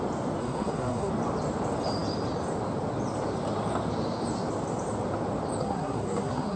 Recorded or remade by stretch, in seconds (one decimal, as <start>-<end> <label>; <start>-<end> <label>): 0.0-0.4 recorded; 0.4-1.1 remade; 1.1-5.6 recorded; 5.6-6.6 remade